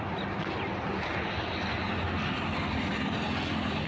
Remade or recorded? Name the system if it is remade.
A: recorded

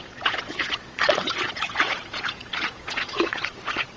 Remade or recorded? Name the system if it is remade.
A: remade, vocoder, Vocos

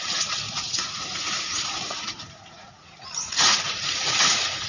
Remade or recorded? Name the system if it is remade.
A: remade, vocoder, Vocos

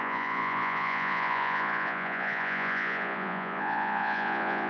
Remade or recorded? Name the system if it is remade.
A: remade, vocoder, Vocos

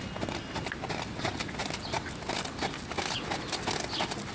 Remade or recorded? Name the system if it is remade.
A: recorded